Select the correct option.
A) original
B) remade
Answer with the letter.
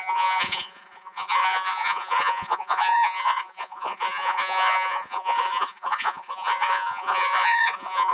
B